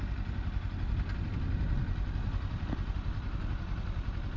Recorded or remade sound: recorded